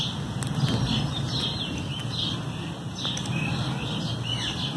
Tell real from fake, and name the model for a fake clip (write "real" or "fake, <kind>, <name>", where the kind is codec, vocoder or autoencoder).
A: real